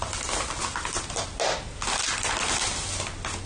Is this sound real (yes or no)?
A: yes